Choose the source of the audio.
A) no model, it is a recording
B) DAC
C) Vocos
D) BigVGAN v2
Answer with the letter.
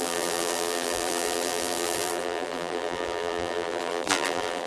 D